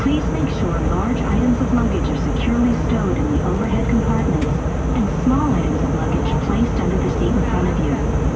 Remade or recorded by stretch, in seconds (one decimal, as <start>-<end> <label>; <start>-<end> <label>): 0.0-8.4 recorded